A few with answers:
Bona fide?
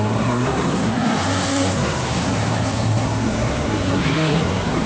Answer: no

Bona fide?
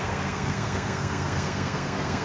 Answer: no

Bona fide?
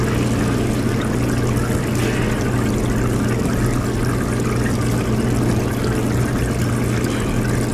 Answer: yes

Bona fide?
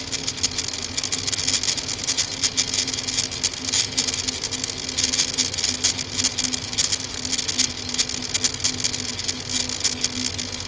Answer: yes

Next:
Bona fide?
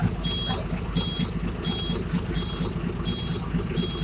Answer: yes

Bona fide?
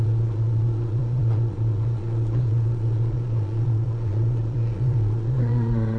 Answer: no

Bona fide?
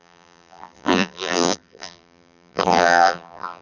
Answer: no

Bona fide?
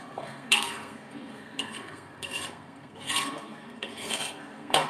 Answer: no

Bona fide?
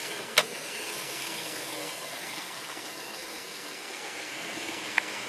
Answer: no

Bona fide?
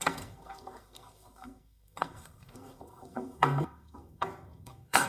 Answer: no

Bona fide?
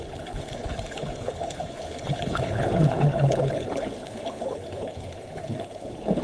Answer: no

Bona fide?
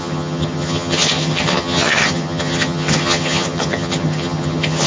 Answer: no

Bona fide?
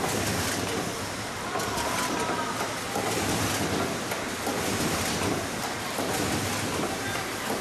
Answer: no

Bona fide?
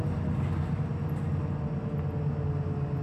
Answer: yes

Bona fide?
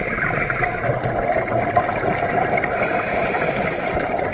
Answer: yes